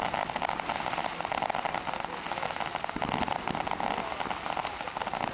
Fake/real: real